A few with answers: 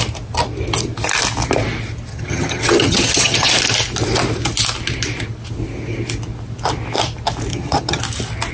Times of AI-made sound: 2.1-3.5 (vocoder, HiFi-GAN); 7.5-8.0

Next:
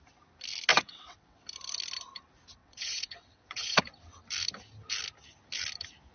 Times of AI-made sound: 0.7-1.4 (vocoder, WaveNeXt); 2.6-3.8

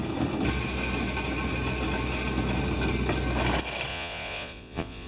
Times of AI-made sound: 3.9-5.1 (vocoder, Vocos)

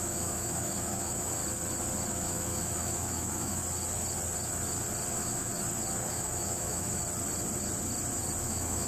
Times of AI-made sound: 0.0-1.4 (autoencoder, DAC-VAE); 2.1-3.6; 5.1-5.5; 6.1-7.0; 8.4-8.9

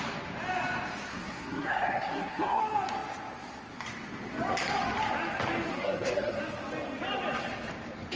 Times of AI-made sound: 1.1-2.6 (codec, SNAC); 5.7-6.4

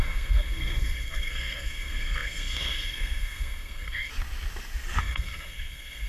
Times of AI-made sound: 0.0-4.1 (codec, SNAC); 5.0-6.1

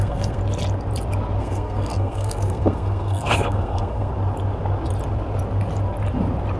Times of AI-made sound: 0.0-0.4 (codec, SNAC); 1.4-4.1

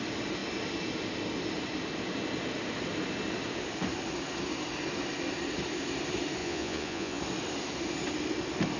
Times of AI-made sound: 6.4-7.2 (vocoder, Vocos)